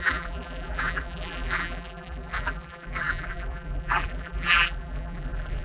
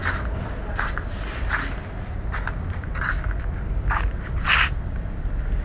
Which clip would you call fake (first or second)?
first